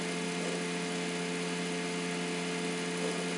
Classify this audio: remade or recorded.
recorded